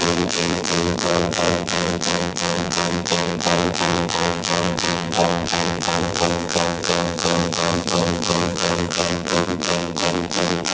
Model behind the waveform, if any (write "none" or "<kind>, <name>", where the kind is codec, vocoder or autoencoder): vocoder, BigVGAN v2